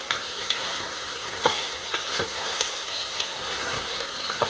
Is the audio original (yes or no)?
no